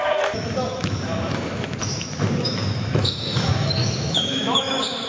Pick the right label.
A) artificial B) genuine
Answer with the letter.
A